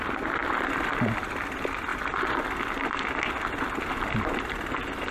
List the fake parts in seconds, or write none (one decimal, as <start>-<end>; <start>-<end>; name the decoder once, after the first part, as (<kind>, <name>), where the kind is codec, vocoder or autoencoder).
none